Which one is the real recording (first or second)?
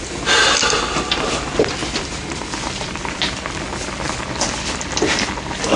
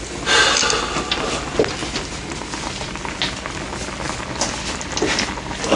second